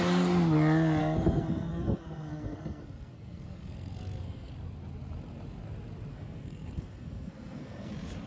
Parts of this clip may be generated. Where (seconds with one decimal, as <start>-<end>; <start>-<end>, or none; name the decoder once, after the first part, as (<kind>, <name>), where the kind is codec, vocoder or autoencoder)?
1.0-4.5 (codec, SNAC); 6.1-7.9